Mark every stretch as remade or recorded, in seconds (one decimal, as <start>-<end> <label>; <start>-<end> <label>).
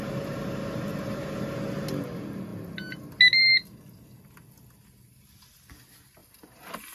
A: 0.0-0.9 recorded; 0.9-1.5 remade; 1.5-6.9 recorded